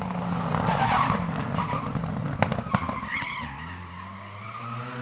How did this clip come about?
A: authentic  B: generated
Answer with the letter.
A